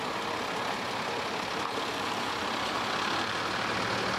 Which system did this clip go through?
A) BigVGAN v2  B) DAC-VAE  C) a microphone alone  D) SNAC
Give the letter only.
C